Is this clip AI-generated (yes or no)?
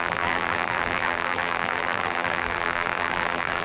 yes